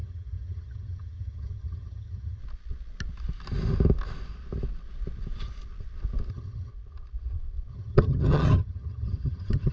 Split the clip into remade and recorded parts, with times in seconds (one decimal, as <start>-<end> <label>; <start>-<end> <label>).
0.0-2.4 remade; 2.4-6.3 recorded; 6.3-6.7 remade; 6.7-7.7 recorded; 7.7-9.7 remade